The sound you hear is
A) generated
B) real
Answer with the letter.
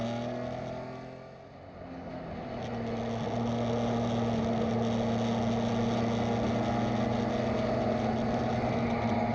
B